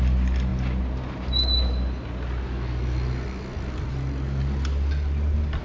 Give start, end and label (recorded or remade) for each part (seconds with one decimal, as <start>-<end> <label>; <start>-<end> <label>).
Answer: 0.0-5.6 recorded